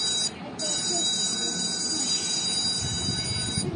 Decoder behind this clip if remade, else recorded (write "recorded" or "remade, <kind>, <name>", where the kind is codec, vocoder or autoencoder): recorded